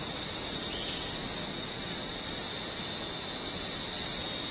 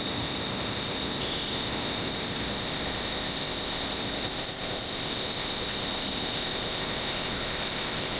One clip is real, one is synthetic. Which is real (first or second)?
first